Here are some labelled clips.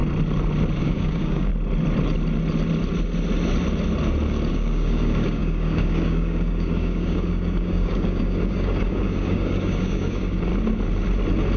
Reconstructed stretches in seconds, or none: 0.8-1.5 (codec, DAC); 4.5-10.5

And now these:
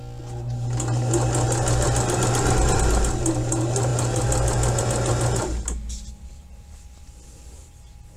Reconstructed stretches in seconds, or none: none

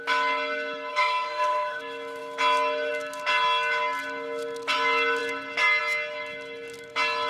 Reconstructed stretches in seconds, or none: 0.9-1.8 (codec, SNAC)

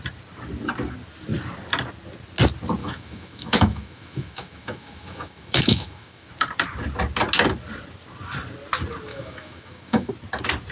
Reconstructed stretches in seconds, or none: 2.8-6.3 (autoencoder, DAC-VAE); 9.1-10.1

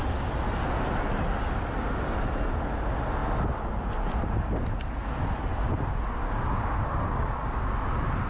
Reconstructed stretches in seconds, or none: 6.2-7.7 (codec, DAC)

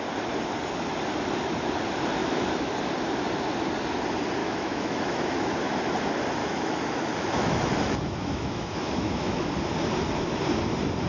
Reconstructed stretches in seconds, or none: 2.2-2.7 (autoencoder, DAC-VAE); 4.4-5.7; 6.4-9.5

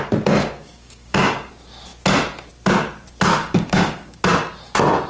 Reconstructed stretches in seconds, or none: 0.4-1.5 (codec, DAC); 3.4-4.2